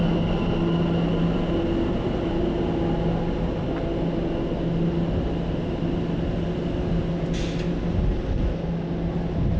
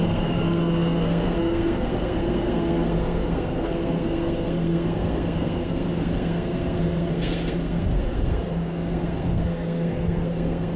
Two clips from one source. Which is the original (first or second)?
first